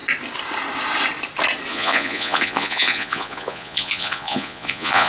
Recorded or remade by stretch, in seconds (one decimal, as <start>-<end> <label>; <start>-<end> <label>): 0.0-1.7 recorded; 1.7-5.1 remade